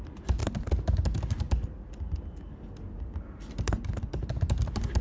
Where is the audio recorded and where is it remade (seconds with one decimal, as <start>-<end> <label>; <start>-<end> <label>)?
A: 0.0-5.0 recorded